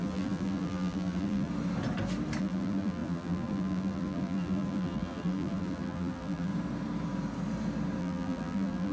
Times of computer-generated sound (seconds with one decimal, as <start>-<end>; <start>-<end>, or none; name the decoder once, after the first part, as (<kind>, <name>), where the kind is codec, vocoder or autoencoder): 0.0-1.5 (vocoder, BigVGAN v2); 2.4-6.5; 8.0-8.9